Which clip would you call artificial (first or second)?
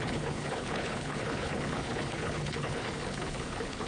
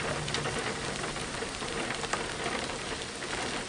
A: first